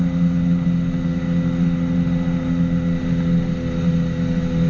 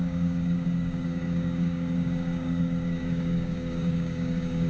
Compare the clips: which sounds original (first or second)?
first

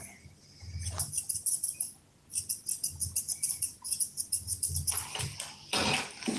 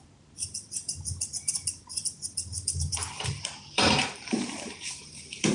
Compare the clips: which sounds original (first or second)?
first